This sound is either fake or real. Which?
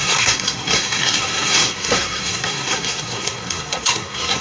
fake